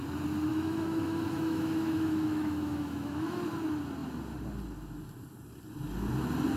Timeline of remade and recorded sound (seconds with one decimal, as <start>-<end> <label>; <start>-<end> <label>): 0.0-0.5 recorded; 0.5-3.4 remade; 3.4-6.6 recorded